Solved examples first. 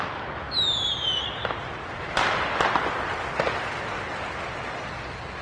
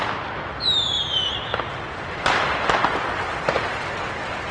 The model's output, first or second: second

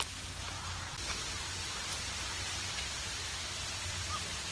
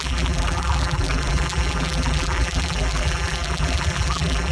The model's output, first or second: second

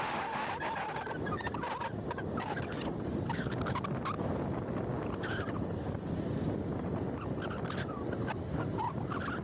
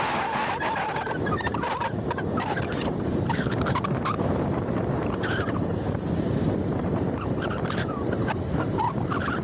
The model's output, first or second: second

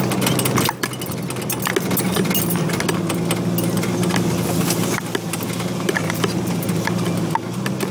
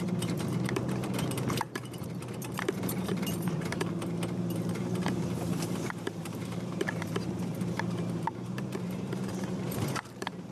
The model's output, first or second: second